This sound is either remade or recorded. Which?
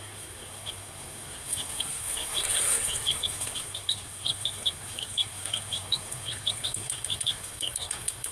remade